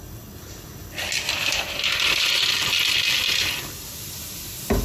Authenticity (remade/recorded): recorded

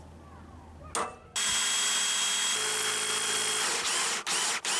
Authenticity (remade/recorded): recorded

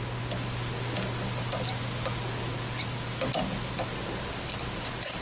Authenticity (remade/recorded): recorded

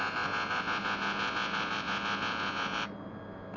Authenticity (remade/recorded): recorded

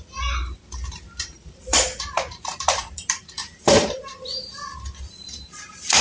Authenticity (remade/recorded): remade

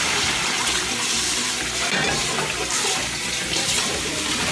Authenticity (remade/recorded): recorded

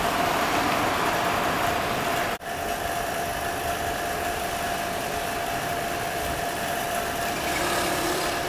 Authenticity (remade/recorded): remade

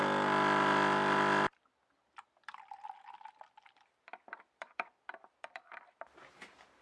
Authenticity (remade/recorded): remade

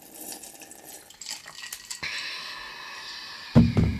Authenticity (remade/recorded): recorded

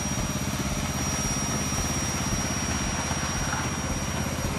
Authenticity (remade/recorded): recorded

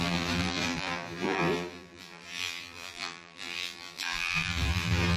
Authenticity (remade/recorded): remade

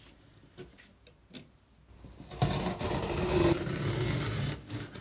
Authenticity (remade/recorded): recorded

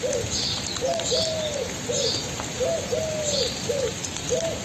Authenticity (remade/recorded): recorded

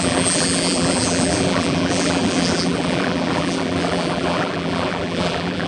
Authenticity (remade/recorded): remade